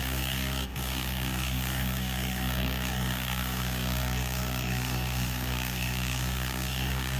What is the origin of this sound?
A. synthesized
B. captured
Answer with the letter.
A